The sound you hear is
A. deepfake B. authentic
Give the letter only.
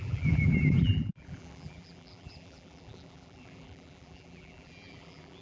A